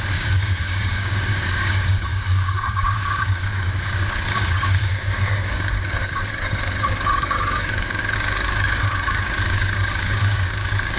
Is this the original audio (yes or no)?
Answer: no